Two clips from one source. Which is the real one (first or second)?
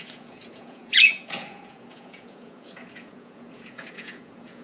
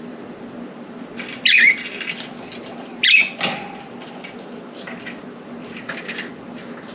second